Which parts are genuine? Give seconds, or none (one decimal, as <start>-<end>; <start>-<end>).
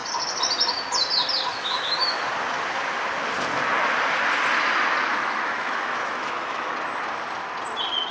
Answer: 0.0-1.5; 2.2-5.1; 6.7-8.1